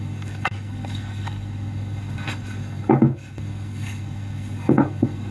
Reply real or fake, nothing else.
fake